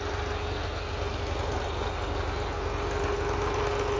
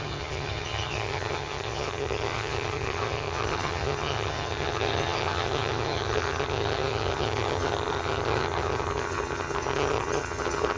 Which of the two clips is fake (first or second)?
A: second